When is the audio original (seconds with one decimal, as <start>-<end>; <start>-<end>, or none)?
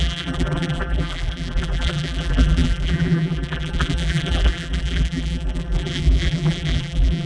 none